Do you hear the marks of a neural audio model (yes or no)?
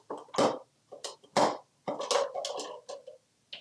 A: no